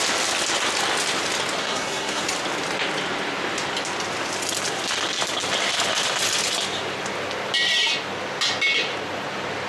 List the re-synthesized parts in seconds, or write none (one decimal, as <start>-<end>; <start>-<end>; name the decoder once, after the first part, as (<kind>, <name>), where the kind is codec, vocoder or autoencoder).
1.6-2.2 (codec, SNAC)